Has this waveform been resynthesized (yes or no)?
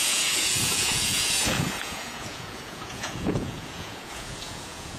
yes